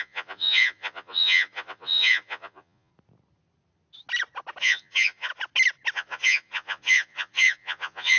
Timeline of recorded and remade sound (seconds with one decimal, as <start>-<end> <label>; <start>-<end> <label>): 0.0-2.9 remade; 2.9-4.6 recorded; 4.6-5.3 remade; 5.3-5.9 recorded; 5.9-8.2 remade

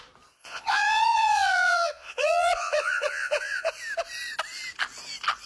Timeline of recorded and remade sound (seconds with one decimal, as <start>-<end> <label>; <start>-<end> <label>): 0.0-0.4 recorded; 0.4-3.7 remade; 3.7-5.5 recorded